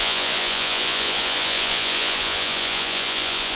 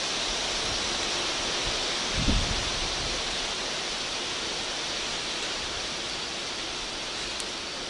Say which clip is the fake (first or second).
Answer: first